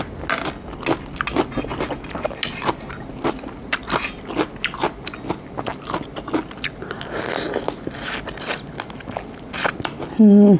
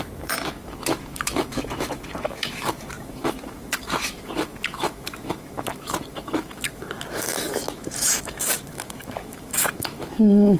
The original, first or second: first